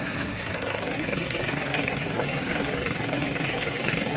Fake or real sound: fake